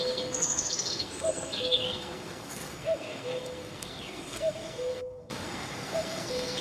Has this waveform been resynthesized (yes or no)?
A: yes